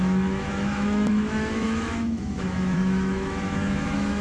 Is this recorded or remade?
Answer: remade